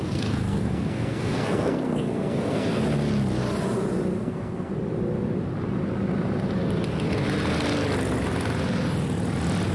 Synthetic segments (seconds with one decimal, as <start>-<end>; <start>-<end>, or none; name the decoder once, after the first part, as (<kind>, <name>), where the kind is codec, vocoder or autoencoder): 0.0-2.8 (codec, SNAC); 4.2-4.7